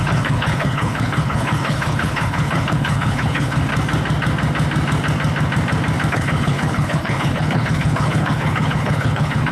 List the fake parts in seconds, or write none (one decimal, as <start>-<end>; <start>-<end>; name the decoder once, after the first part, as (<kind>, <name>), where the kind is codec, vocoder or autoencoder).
0.0-3.7 (codec, HILCodec); 6.1-9.5